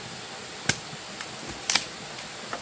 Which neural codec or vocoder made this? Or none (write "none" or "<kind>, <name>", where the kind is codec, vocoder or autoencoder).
none